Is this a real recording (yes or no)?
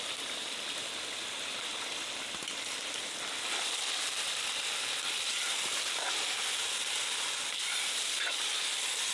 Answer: yes